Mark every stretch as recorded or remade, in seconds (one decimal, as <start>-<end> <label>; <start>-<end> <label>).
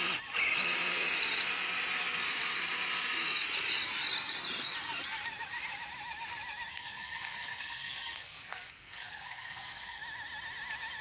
0.0-6.7 recorded; 6.7-10.0 remade; 10.0-11.0 recorded